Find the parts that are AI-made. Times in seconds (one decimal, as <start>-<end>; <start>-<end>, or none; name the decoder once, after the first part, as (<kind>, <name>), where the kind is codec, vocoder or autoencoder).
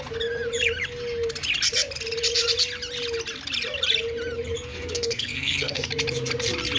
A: 4.7-5.9 (codec, SNAC)